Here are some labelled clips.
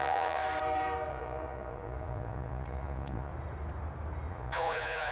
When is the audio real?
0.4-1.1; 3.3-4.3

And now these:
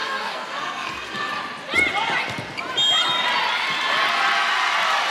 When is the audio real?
1.3-5.1

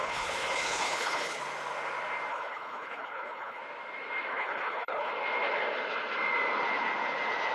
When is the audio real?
1.4-2.3; 3.6-4.3; 5.1-7.5

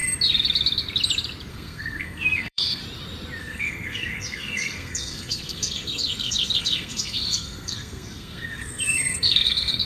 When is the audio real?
0.0-1.5; 2.8-3.4

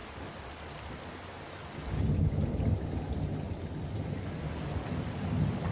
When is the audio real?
0.0-5.7

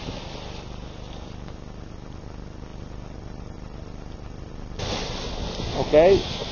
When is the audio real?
0.0-6.5

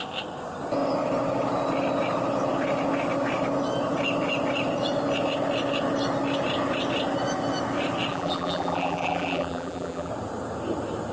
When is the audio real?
0.0-8.1; 10.1-11.1

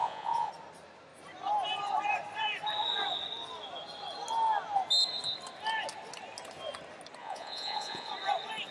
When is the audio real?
0.5-7.2; 8.1-8.7